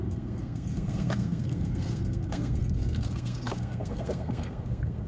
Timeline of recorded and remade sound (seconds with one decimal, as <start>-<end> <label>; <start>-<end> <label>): 0.0-5.1 remade